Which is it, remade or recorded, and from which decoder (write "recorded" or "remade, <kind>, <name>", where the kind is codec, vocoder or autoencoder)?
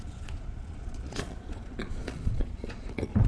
remade, vocoder, Vocos